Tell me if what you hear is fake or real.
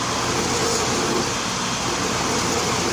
real